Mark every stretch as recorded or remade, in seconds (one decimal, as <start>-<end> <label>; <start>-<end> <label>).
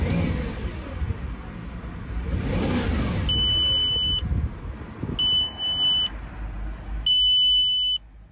0.0-8.3 recorded